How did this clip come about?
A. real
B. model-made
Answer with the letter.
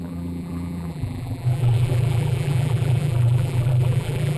B